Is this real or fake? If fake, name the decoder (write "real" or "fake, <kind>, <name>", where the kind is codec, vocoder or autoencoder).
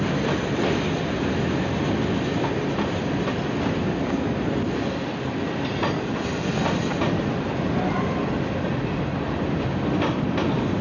real